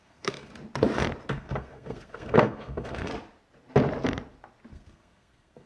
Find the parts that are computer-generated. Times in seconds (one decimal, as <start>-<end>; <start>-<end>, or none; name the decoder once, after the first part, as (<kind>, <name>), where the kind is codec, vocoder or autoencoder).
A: 0.0-0.5 (codec, SNAC); 1.3-3.1; 4.7-5.7